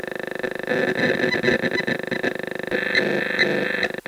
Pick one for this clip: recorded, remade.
recorded